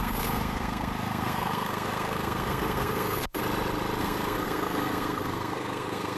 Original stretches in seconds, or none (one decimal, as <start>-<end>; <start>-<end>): 3.4-4.0